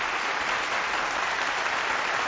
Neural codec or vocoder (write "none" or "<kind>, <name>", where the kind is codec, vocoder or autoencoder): none